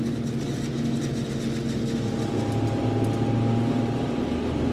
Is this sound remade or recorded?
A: recorded